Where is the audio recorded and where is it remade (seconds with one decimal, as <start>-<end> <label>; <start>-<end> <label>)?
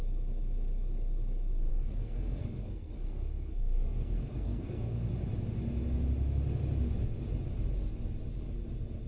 0.0-1.7 recorded; 1.7-5.1 remade; 5.1-9.1 recorded